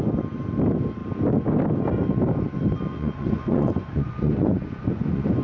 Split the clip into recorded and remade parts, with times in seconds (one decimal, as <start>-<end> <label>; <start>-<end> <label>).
0.0-2.9 recorded; 2.9-5.4 remade